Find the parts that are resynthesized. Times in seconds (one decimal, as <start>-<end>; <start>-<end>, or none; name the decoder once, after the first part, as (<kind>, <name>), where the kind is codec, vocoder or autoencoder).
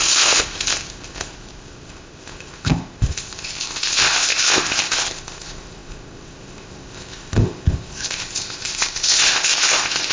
0.0-10.1 (codec, ZipCodec)